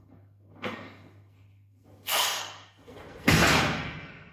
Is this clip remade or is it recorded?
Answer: remade